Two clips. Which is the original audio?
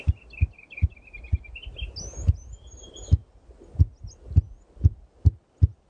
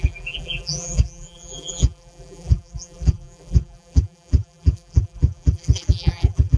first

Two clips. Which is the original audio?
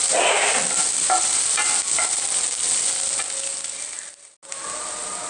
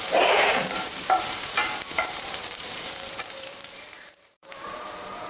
first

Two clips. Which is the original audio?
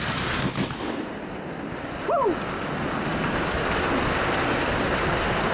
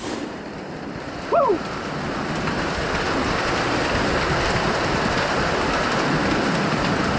first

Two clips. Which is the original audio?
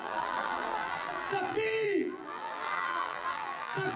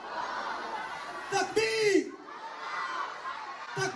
second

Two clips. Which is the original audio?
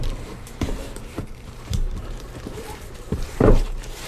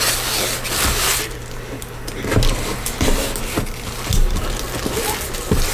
second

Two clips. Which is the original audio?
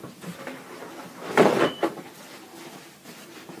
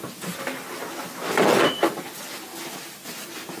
second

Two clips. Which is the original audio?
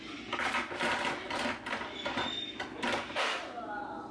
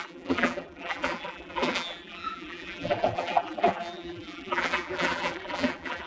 first